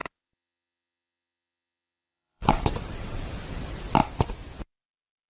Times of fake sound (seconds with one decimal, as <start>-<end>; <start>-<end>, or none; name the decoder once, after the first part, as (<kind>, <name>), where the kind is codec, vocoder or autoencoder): 0.0-3.2 (vocoder, WaveNeXt)